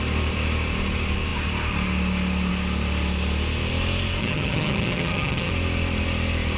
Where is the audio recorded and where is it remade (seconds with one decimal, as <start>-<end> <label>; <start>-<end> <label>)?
0.0-4.2 recorded; 4.2-5.5 remade; 5.5-6.6 recorded